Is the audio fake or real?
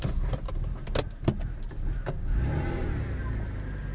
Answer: real